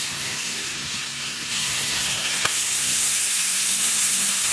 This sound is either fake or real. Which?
fake